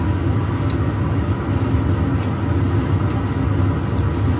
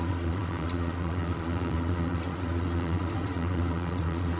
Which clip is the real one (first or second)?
first